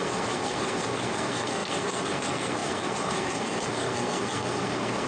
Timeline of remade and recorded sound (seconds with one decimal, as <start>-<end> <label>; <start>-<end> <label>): 0.0-5.1 remade